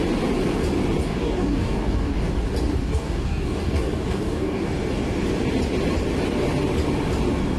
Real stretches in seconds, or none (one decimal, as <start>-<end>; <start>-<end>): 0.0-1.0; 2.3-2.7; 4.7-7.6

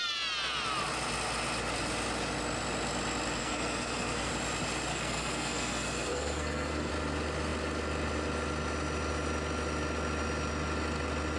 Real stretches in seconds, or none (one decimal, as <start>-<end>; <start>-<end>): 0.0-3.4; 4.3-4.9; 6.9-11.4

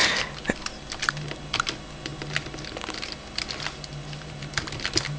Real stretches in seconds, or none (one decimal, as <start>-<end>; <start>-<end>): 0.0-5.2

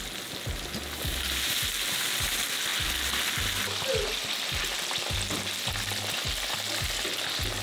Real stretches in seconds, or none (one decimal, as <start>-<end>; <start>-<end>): 0.0-7.6

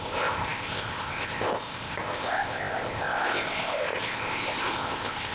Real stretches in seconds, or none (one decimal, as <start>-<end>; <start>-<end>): none

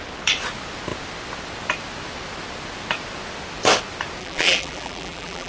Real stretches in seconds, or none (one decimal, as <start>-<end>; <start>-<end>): 0.0-4.2

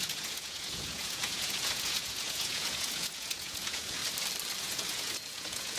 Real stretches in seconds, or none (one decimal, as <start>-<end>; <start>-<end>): 4.0-4.6

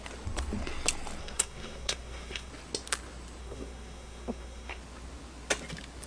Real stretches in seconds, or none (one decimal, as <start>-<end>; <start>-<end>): 0.0-1.2; 2.5-3.4; 4.8-6.1